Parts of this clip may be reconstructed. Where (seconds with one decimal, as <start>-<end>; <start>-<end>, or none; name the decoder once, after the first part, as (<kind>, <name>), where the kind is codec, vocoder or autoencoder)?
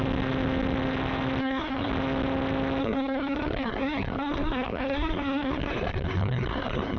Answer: 1.4-1.9 (codec, SNAC); 2.8-7.0